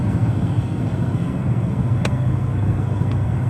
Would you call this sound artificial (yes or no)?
yes